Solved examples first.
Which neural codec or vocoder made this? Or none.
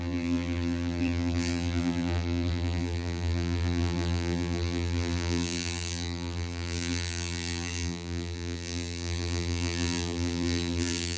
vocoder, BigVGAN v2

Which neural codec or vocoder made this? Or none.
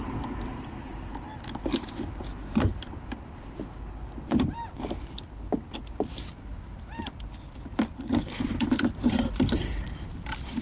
vocoder, BigVGAN v2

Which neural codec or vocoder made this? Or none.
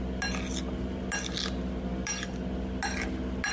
none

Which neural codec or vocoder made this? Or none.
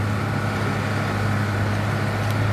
none